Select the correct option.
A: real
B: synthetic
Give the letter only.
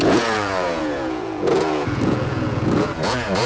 B